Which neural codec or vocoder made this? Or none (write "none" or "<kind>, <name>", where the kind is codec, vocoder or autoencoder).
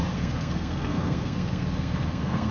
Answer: codec, SNAC